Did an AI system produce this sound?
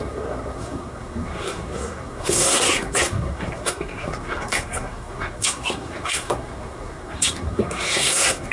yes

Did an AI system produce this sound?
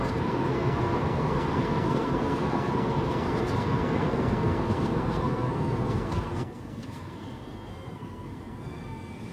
yes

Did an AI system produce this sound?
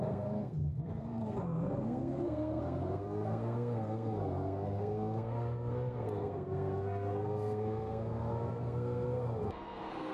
yes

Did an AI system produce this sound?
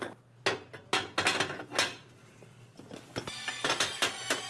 no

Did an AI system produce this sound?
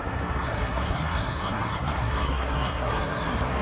yes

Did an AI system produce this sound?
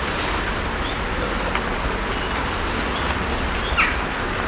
no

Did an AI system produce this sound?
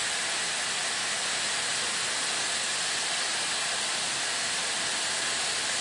no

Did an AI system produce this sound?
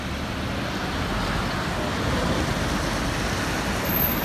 no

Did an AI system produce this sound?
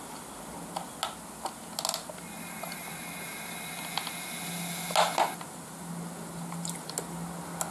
no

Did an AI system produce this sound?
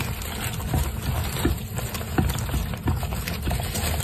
no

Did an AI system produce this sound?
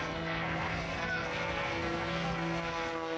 yes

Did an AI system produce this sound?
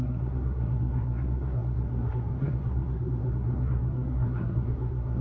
yes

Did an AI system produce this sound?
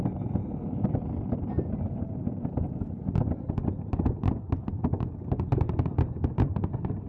no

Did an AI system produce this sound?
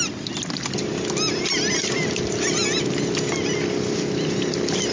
no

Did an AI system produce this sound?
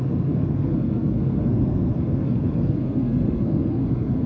yes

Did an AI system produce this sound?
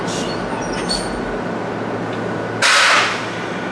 no